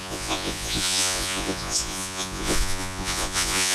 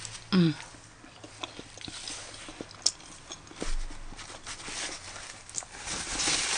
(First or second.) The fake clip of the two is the first